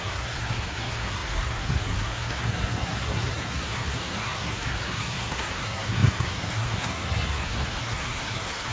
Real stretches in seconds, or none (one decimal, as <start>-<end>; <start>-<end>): none